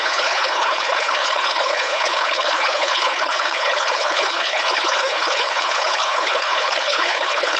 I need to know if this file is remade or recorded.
remade